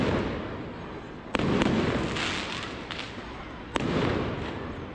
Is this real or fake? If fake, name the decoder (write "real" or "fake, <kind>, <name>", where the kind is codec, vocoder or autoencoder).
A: real